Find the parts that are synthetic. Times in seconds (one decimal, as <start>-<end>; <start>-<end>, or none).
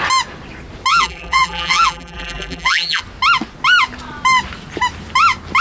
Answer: 0.9-3.0